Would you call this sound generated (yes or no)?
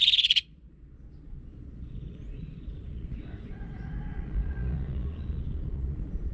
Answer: yes